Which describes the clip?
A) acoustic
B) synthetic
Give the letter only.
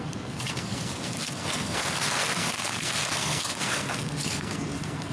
B